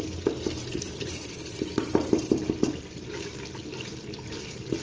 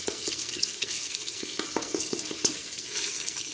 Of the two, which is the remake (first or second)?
second